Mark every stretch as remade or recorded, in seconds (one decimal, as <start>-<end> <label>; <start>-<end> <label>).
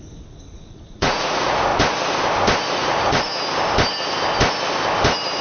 0.0-1.7 remade; 1.7-2.7 recorded; 2.7-3.3 remade; 3.3-5.4 recorded